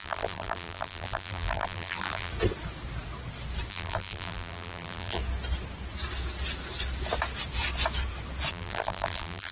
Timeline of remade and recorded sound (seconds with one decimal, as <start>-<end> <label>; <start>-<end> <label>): 0.0-2.3 remade; 2.3-3.7 recorded; 3.7-5.2 remade; 5.2-8.5 recorded; 8.5-9.5 remade

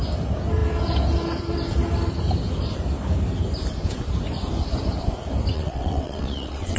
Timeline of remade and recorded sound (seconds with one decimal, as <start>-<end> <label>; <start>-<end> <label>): 0.0-5.5 recorded; 5.5-6.8 remade

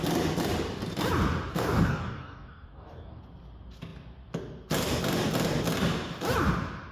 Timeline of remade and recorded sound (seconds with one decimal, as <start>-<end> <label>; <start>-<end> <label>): 0.0-1.5 recorded; 1.5-3.2 remade; 3.2-6.9 recorded